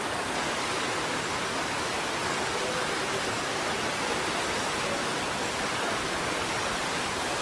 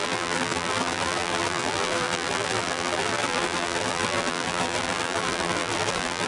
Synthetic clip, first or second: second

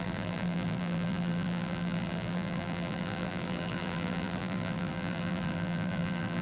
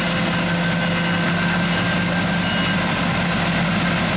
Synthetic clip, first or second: first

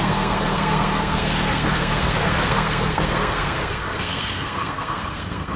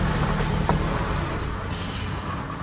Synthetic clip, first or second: first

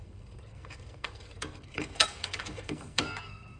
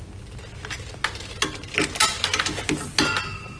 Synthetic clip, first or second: first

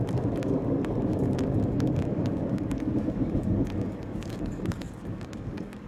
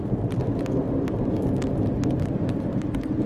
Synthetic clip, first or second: first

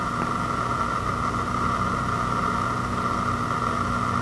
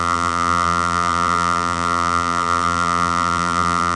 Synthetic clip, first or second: second